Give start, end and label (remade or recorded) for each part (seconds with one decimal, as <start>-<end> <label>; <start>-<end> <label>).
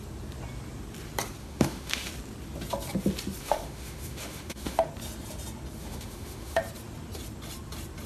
0.0-1.4 recorded; 1.4-2.1 remade; 2.1-3.4 recorded; 3.4-4.9 remade; 4.9-5.8 recorded; 5.8-6.6 remade; 6.6-8.1 recorded